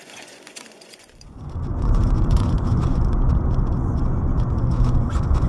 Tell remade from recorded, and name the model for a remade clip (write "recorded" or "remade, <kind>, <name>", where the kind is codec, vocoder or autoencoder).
remade, vocoder, Vocos